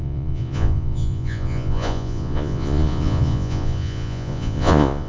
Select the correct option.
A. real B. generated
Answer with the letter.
B